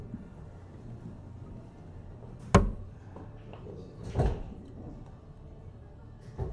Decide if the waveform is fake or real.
real